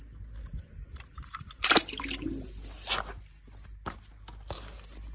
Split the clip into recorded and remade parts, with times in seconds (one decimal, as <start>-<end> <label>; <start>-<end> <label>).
0.0-0.5 recorded; 0.5-1.6 remade; 1.6-5.1 recorded